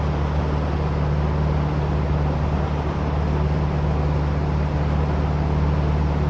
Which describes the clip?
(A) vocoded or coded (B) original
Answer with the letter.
B